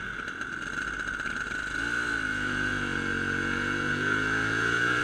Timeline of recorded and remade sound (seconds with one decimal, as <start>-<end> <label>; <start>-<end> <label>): 0.0-2.3 recorded; 2.3-5.0 remade